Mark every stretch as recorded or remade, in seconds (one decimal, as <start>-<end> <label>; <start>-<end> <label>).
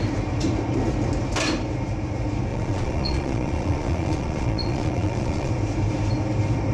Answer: 0.0-2.5 recorded; 2.5-5.5 remade; 5.5-6.7 recorded